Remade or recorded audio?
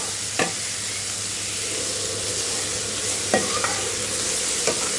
recorded